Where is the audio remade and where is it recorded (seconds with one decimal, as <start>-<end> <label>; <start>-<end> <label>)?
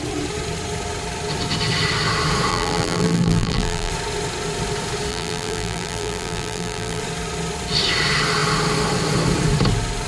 0.0-2.5 recorded; 2.5-3.9 remade; 3.9-5.1 recorded; 5.1-7.0 remade; 7.0-10.1 recorded